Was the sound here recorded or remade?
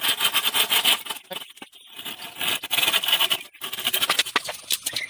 recorded